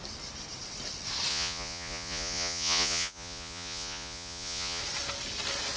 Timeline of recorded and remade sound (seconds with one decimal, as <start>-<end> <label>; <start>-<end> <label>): 0.0-1.3 recorded; 1.3-4.8 remade; 4.8-5.8 recorded